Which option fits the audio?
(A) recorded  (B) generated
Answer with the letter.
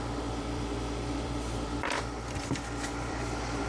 B